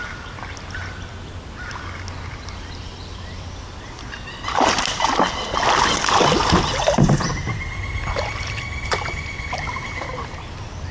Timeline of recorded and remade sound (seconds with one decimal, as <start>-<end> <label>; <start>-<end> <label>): 0.0-6.4 recorded; 6.4-7.1 remade; 7.1-10.9 recorded